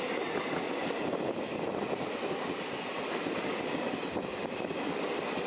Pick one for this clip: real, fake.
real